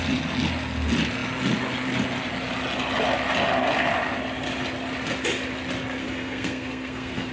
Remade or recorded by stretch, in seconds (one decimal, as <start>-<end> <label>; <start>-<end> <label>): 0.0-6.0 recorded; 6.0-7.3 remade